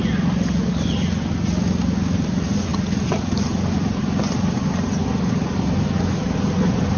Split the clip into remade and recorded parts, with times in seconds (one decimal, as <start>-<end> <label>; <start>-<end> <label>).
0.0-7.0 recorded